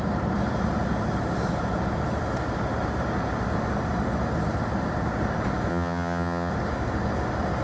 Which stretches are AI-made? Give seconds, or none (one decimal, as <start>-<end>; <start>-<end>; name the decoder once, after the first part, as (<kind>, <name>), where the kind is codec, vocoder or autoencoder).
5.7-6.5 (vocoder, HiFi-GAN)